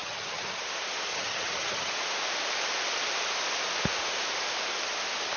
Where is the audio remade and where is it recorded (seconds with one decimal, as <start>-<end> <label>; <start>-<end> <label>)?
0.0-0.6 remade; 0.6-1.1 recorded; 1.1-1.9 remade; 1.9-5.4 recorded